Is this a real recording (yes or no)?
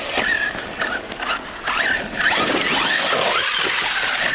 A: yes